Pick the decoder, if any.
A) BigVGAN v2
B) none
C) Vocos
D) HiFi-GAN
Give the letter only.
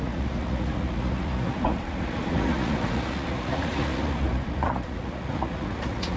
C